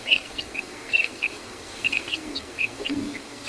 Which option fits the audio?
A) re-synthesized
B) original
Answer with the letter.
A